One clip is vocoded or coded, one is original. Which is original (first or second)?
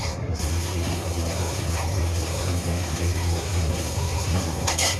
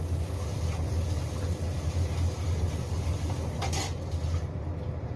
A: second